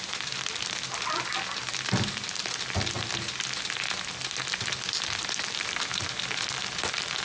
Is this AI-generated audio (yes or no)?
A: no